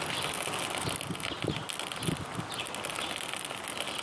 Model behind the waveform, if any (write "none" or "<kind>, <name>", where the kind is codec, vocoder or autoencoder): none